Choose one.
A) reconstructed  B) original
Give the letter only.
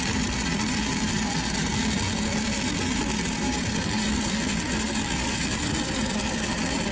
A